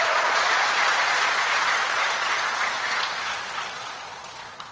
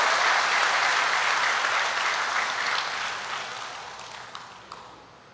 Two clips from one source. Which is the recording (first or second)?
second